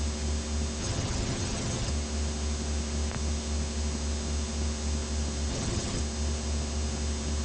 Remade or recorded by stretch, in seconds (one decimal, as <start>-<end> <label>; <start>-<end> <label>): 0.0-0.8 recorded; 0.8-1.9 remade; 1.9-5.5 recorded; 5.5-6.0 remade; 6.0-7.4 recorded